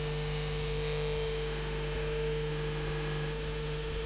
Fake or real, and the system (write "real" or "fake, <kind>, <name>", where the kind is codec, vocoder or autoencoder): fake, autoencoder, DAC-VAE